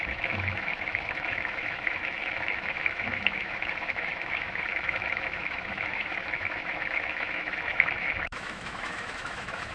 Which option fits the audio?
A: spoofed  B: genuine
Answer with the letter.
A